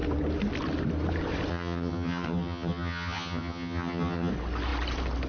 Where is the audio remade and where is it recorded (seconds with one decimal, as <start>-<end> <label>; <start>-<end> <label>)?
0.0-1.5 recorded; 1.5-4.3 remade; 4.3-5.3 recorded